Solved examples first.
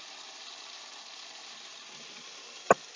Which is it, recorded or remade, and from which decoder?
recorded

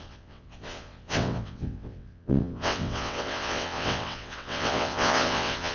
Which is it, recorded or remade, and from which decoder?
remade, vocoder, WaveNeXt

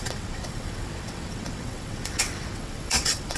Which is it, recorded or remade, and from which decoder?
remade, vocoder, WaveNeXt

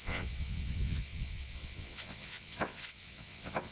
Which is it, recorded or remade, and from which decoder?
remade, vocoder, WaveNeXt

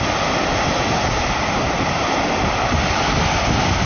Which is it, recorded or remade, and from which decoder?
recorded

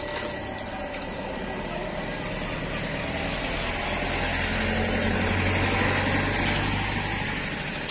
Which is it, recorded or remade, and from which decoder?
recorded